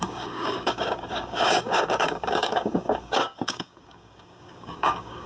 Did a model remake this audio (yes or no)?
yes